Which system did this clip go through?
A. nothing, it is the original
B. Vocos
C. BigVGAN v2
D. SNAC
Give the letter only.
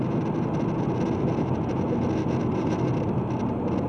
A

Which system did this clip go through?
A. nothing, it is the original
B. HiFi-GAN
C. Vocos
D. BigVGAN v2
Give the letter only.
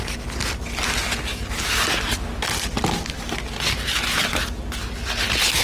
A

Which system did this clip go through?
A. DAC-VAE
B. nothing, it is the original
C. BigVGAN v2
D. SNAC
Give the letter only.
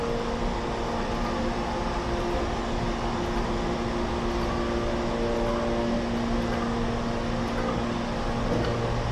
B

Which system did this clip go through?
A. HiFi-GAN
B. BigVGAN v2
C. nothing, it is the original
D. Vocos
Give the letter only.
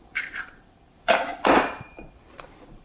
B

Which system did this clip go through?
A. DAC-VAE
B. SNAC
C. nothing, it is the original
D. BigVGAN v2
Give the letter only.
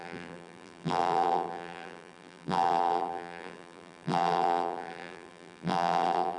D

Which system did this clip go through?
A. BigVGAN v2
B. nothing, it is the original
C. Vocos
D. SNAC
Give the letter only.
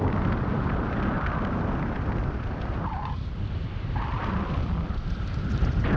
A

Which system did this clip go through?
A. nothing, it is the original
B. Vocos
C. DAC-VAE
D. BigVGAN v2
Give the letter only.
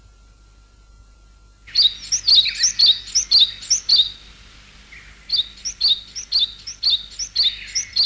A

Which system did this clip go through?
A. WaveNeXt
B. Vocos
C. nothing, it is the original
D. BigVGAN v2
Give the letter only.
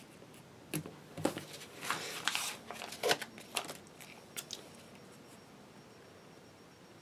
C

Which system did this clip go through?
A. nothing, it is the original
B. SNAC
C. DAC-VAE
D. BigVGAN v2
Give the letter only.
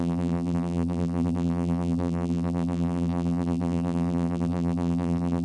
D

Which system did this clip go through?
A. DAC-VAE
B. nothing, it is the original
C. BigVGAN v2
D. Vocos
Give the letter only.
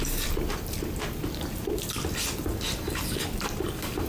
C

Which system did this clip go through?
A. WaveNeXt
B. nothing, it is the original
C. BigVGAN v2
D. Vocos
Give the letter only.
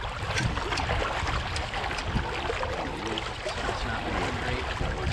B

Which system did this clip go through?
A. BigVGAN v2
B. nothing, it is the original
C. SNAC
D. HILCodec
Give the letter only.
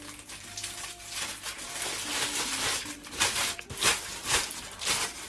A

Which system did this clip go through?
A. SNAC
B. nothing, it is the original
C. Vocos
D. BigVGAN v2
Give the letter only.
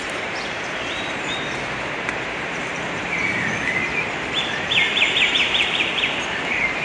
D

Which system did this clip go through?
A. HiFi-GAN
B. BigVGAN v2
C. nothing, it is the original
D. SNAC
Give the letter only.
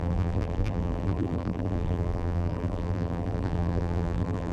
B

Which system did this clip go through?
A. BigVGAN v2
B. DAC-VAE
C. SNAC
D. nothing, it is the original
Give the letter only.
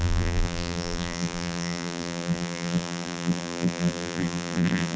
A